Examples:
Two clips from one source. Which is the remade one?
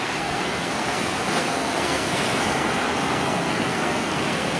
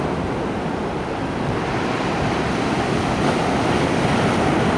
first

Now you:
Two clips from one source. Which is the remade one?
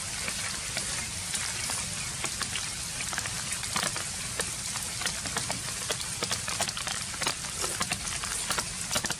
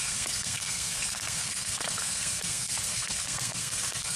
second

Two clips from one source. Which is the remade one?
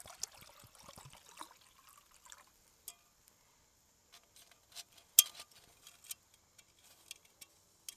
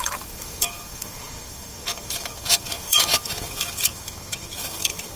second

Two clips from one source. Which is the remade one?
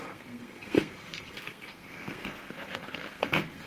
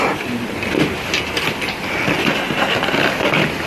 first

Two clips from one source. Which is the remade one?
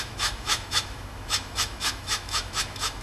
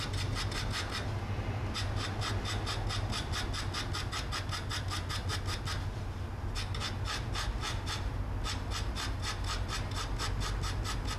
first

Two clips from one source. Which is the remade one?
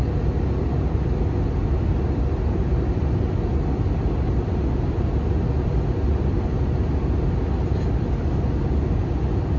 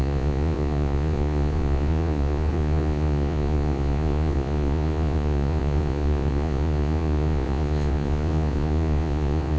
second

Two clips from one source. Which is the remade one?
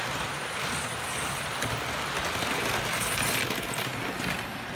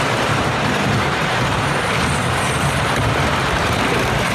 second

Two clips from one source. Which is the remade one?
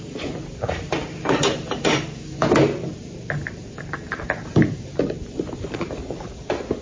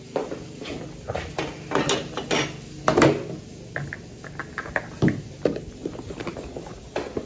first